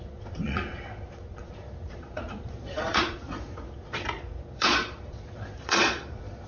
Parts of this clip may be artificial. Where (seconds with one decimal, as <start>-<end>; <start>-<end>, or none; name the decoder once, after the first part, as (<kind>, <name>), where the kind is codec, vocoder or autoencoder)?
0.0-6.5 (vocoder, Vocos)